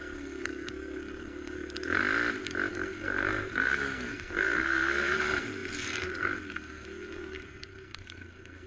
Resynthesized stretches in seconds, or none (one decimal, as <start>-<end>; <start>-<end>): 0.0-2.0; 2.7-8.7